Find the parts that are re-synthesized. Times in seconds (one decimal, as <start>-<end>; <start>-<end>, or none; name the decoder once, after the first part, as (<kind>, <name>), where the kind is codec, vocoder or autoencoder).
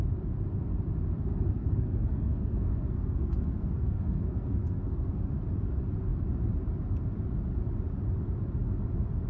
1.6-5.3 (codec, SNAC)